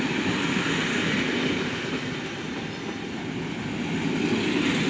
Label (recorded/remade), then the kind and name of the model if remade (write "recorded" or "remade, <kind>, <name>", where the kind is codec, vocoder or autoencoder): recorded